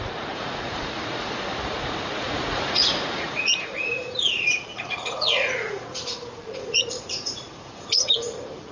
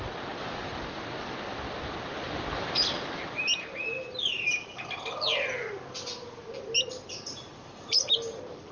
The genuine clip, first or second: second